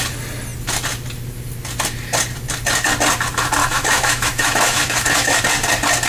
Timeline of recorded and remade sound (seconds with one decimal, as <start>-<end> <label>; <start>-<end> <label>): 0.0-3.6 recorded; 3.6-5.4 remade; 5.4-6.1 recorded